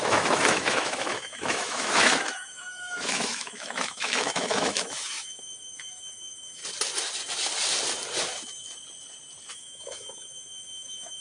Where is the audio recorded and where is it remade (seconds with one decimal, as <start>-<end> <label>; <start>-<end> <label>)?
0.0-6.6 remade; 6.6-9.5 recorded; 9.5-11.2 remade